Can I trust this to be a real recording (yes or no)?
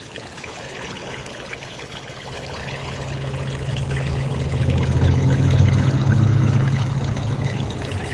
no